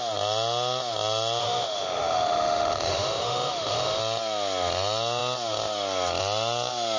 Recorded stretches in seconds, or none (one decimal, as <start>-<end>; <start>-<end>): 0.0-1.4; 4.0-7.0